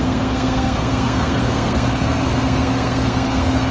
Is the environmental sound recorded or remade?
remade